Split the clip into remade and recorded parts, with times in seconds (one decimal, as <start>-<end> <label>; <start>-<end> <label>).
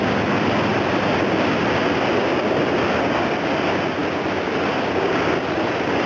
0.0-6.1 recorded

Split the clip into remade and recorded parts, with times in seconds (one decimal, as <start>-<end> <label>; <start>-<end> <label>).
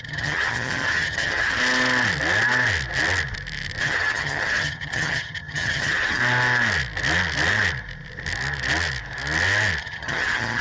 0.0-1.6 remade; 1.6-3.8 recorded; 3.8-6.2 remade; 6.2-9.8 recorded; 9.8-10.6 remade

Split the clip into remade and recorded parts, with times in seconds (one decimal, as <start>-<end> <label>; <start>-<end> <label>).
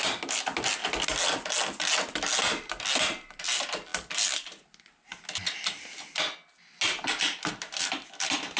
0.0-8.6 recorded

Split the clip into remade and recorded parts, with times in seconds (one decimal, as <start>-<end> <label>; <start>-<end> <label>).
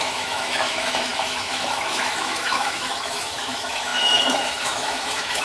0.0-5.4 remade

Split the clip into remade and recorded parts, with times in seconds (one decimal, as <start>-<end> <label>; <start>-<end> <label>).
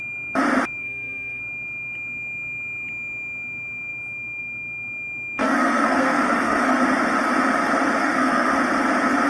0.0-0.8 recorded; 0.8-1.4 remade; 1.4-5.4 recorded; 5.4-6.8 remade; 6.8-8.0 recorded; 8.0-8.5 remade; 8.5-9.3 recorded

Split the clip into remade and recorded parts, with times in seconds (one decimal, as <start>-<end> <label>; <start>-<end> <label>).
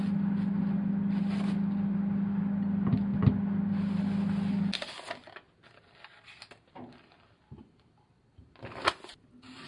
0.0-9.7 recorded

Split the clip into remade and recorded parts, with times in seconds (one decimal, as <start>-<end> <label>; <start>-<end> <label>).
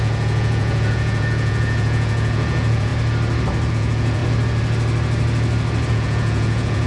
0.0-2.9 remade; 2.9-3.7 recorded; 3.7-4.2 remade; 4.2-5.9 recorded; 5.9-6.9 remade